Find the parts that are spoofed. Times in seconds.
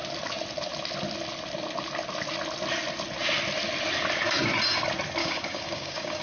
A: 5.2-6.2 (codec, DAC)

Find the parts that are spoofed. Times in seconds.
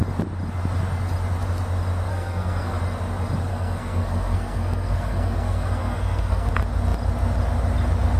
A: 2.1-2.8 (codec, SNAC); 3.5-6.5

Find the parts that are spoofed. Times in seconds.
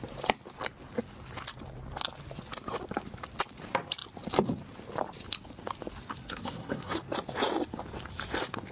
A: 6.2-7.0 (codec, SNAC)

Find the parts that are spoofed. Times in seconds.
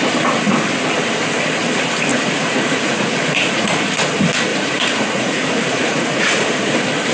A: 2.1-3.8 (vocoder, Vocos); 4.5-6.5